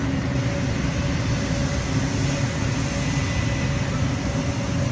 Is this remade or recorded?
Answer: recorded